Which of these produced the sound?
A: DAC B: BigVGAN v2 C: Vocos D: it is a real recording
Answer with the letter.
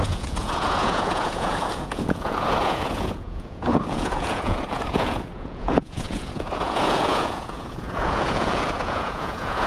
C